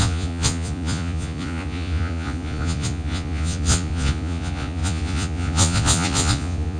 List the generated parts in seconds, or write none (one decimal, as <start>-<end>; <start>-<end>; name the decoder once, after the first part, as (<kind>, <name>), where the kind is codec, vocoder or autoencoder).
0.0-6.8 (vocoder, Vocos)